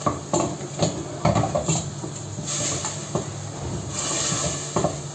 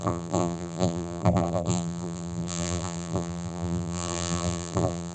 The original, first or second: first